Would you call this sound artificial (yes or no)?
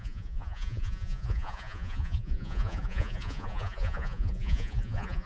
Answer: yes